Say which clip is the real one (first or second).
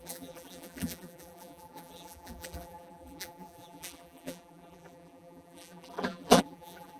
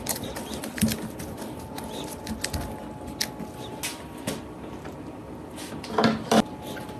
second